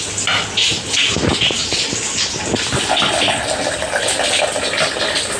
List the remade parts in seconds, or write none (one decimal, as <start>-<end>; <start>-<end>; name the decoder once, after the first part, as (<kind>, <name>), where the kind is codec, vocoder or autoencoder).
0.6-1.1 (vocoder, BigVGAN v2)